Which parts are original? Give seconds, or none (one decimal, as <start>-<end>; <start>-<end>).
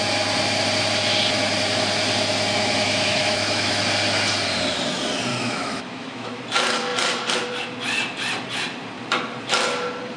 0.0-2.6; 3.8-5.3; 6.4-10.2